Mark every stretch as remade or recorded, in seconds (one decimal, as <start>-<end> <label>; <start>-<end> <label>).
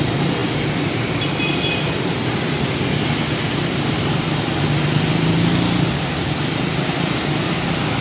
0.0-8.0 recorded